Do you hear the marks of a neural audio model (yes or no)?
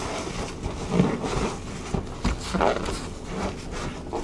no